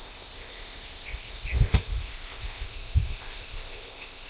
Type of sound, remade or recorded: remade